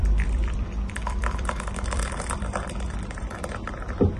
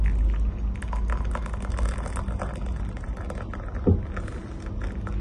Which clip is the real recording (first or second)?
second